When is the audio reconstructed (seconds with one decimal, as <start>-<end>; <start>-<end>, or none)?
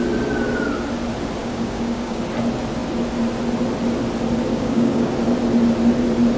1.4-2.2; 4.5-5.1